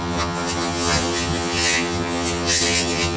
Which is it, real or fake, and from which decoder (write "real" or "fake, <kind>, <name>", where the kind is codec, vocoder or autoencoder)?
fake, vocoder, HiFi-GAN